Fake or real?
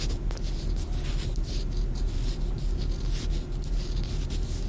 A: real